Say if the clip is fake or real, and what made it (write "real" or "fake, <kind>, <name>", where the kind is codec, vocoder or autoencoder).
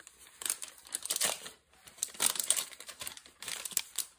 fake, vocoder, BigVGAN v2